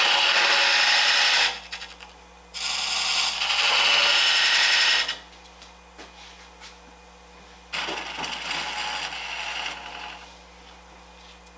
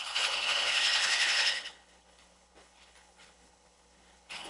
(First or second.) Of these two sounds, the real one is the first